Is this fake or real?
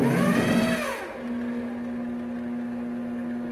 real